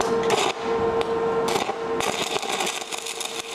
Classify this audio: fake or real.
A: real